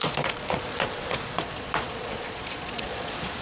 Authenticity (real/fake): fake